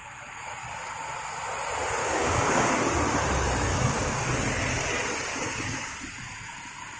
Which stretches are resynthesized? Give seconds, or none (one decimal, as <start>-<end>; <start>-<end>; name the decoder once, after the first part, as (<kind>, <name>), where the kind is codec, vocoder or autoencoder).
2.0-2.7 (codec, DAC); 3.7-4.3; 5.3-5.9